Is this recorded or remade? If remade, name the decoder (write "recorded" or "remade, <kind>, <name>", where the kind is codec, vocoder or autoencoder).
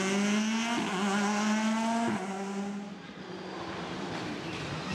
recorded